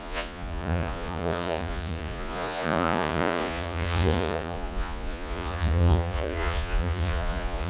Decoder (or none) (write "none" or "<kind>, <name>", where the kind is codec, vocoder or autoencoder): vocoder, Vocos